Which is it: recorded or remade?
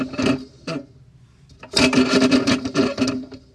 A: recorded